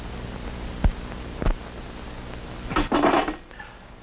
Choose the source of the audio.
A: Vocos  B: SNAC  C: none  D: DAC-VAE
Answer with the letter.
C